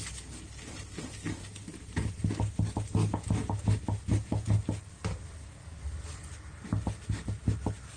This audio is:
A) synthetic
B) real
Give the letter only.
B